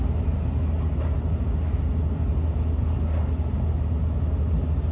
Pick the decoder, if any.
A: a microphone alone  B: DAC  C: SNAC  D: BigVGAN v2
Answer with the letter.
A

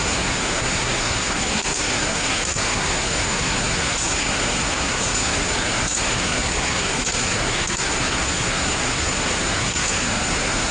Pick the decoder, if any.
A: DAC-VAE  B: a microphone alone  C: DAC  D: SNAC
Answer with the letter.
D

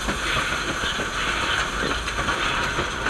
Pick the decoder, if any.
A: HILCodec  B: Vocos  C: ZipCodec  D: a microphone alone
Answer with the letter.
D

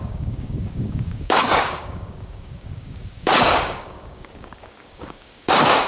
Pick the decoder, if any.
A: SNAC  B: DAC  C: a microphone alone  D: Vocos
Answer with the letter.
B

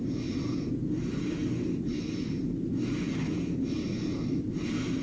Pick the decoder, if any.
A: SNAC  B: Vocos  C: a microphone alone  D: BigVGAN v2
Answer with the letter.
C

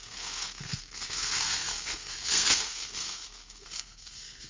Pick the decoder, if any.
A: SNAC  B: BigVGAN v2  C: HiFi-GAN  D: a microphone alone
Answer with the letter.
A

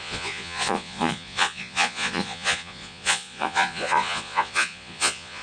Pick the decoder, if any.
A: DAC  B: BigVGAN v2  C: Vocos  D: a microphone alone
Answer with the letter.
C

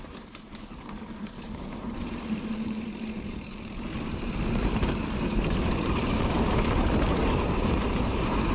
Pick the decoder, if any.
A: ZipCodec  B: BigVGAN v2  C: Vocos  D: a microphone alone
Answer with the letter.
B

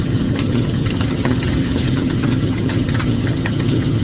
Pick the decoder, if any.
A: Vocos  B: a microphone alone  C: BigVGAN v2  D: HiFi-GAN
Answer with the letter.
D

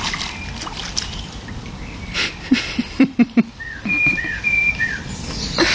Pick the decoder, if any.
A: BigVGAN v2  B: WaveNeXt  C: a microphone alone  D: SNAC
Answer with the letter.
A